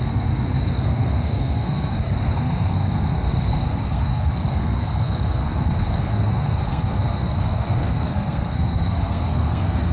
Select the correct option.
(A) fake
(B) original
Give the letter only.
A